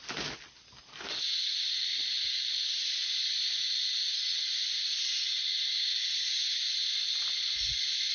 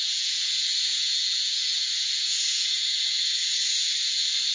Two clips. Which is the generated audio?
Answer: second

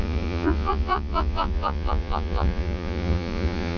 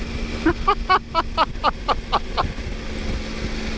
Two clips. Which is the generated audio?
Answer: first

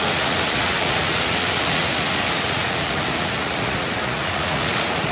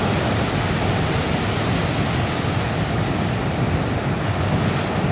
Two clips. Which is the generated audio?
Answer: first